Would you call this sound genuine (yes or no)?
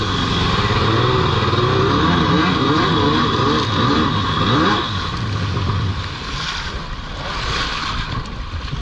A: yes